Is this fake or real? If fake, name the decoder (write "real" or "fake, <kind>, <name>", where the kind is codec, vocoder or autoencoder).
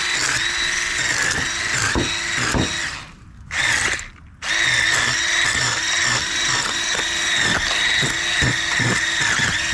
real